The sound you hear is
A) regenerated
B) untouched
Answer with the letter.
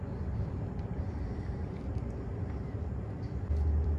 A